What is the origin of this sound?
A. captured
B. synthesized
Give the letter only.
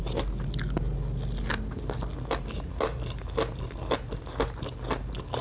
A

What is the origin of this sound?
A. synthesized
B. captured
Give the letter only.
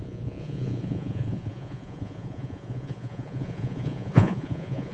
A